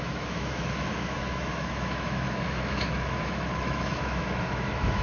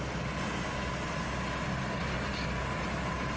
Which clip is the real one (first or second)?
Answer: second